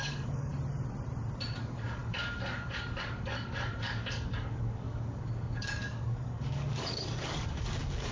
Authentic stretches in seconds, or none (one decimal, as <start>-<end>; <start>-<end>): 0.5-1.6